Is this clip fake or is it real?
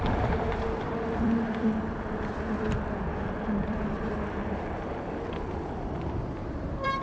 fake